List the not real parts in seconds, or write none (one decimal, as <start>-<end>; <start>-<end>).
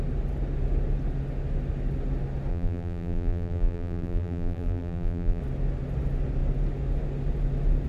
2.5-5.4